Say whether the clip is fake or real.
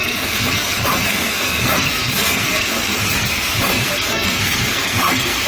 fake